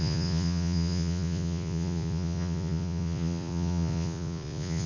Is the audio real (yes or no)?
no